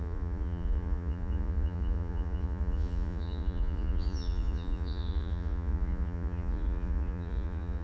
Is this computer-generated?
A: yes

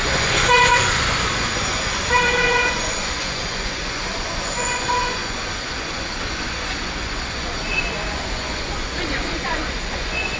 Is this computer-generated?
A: yes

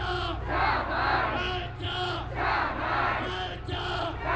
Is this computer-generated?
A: no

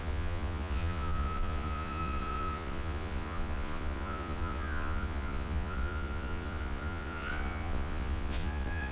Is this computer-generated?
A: yes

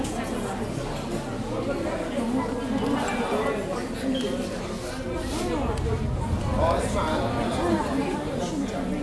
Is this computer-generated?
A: no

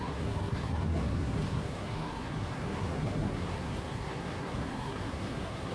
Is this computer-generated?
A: yes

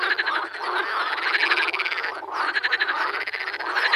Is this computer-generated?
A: no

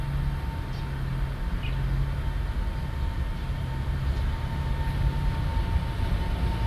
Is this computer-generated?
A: no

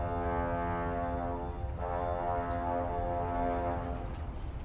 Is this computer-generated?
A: no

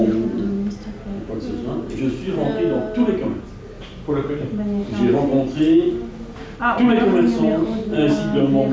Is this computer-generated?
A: no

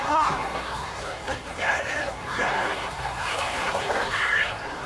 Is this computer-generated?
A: yes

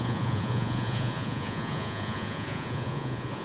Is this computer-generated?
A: yes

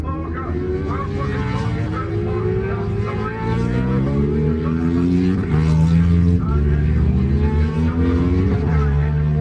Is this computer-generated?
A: no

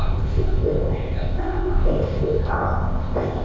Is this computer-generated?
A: yes